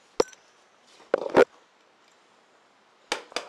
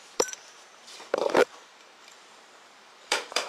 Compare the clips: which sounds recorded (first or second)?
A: first